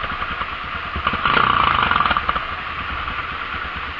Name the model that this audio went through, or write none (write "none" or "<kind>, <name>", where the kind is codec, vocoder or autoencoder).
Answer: none